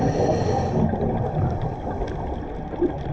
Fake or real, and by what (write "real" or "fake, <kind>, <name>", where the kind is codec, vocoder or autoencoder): real